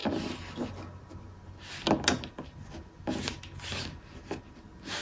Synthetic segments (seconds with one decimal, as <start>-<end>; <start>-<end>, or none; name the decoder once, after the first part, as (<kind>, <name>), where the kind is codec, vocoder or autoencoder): none